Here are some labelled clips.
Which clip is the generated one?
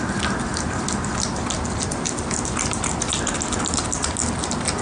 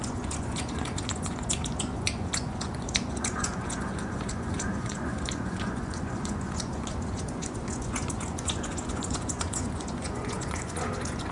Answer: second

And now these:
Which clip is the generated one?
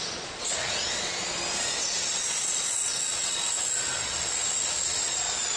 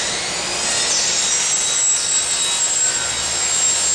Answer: first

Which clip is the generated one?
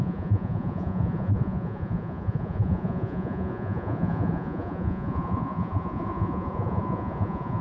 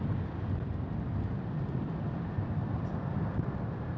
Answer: first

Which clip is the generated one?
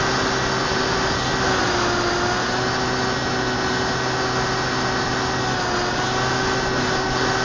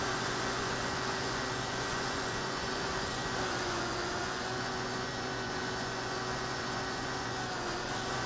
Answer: second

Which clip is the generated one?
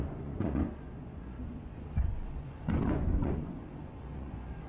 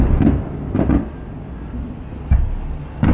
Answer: first